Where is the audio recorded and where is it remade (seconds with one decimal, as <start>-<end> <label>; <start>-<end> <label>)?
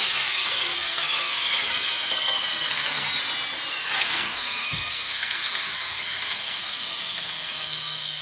0.0-3.2 remade; 3.2-3.7 recorded; 3.7-8.2 remade